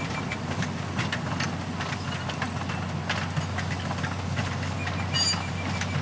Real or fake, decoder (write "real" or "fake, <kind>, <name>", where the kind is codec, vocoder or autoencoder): real